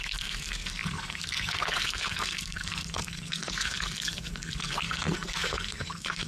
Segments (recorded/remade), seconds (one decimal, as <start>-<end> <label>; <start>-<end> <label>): 0.0-6.3 remade